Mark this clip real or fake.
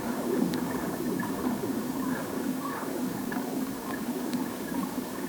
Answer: fake